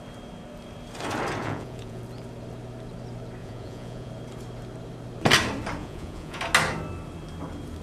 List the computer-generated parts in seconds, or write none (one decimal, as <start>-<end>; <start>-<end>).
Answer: 1.4-2.0; 3.4-4.1; 5.8-6.4